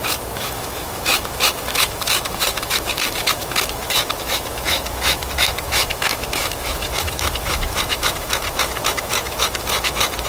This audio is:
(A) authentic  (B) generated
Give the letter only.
B